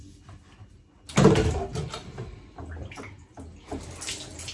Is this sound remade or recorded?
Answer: recorded